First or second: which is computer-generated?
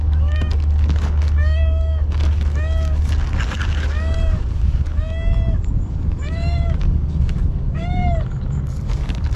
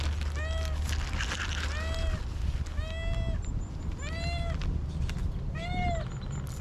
first